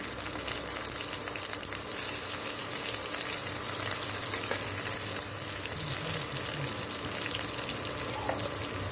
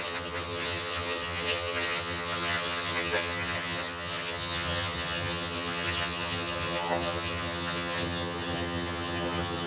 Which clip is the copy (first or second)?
second